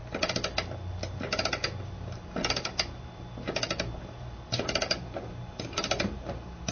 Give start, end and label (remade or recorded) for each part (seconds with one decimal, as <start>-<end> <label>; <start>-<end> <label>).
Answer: 0.0-4.0 recorded; 4.0-6.7 remade